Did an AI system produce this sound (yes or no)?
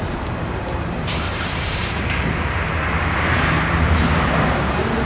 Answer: yes